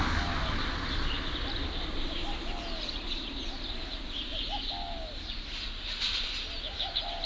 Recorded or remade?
recorded